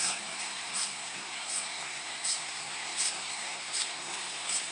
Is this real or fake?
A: fake